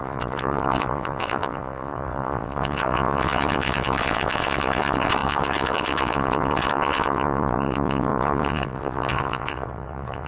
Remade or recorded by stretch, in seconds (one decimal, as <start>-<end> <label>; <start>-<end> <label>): 0.0-10.3 remade